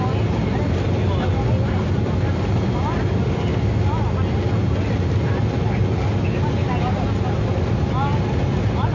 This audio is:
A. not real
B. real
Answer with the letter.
B